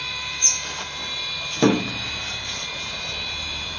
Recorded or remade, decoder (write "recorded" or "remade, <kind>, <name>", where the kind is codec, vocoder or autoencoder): remade, vocoder, BigVGAN v2